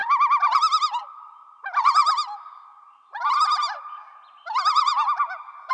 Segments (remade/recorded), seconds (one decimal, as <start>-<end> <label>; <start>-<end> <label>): 0.0-5.7 recorded